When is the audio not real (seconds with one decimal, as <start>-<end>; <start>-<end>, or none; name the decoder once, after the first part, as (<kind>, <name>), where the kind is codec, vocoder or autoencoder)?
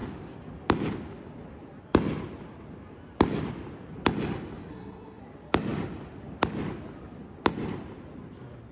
4.7-5.2 (codec, SNAC)